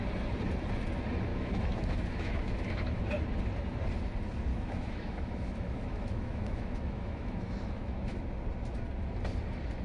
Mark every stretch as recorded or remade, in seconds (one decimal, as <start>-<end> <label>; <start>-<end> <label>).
0.0-1.3 recorded; 1.3-3.0 remade; 3.0-4.5 recorded; 4.5-8.2 remade; 8.2-9.8 recorded